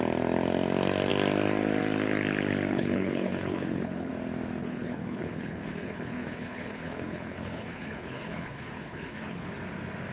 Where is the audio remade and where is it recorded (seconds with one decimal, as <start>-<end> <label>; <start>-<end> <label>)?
0.0-2.7 recorded; 2.7-4.1 remade; 4.1-4.6 recorded; 4.6-9.5 remade; 9.5-10.1 recorded